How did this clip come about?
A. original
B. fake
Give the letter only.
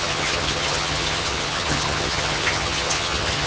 B